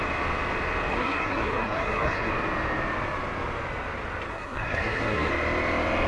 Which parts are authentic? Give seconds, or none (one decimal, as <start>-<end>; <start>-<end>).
0.0-0.9; 2.3-4.3; 5.3-6.1

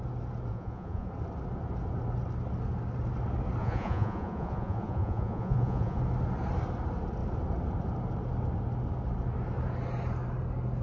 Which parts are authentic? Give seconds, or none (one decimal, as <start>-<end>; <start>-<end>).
0.0-0.5; 1.1-3.6; 6.0-10.8

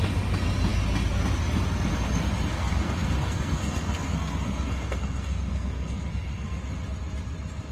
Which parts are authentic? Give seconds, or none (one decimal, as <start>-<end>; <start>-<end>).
0.0-2.5; 6.6-7.7